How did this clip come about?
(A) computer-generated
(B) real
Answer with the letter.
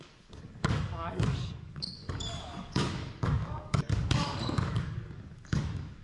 A